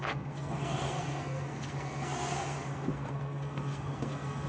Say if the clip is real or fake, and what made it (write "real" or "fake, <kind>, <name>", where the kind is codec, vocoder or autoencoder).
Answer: fake, codec, SNAC